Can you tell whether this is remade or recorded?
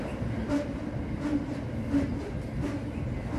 recorded